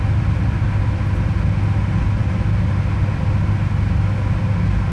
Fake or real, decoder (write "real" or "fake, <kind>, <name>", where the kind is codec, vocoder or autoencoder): real